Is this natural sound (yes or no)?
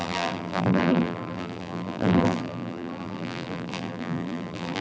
no